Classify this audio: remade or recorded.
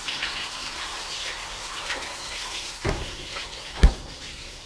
remade